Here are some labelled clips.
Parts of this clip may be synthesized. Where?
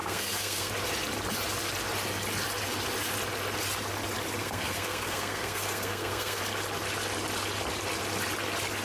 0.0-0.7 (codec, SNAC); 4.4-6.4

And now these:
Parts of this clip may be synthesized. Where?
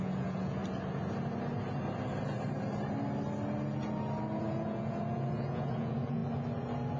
0.0-0.6 (vocoder, Vocos); 4.4-6.2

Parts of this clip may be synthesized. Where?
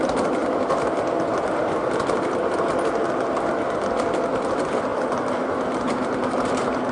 none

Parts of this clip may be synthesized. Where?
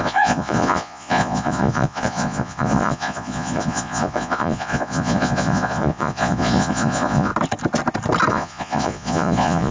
0.0-7.3 (vocoder, Vocos); 8.3-9.7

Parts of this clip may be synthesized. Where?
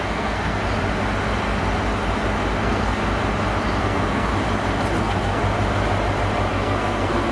0.0-0.6 (codec, SNAC); 2.6-3.0; 3.8-4.3; 5.0-5.4; 6.5-7.3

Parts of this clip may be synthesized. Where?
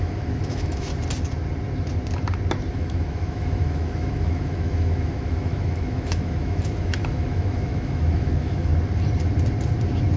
0.0-0.9 (autoencoder, DAC-VAE); 2.7-8.7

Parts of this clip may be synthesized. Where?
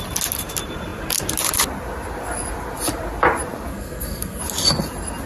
3.7-4.4 (codec, SNAC)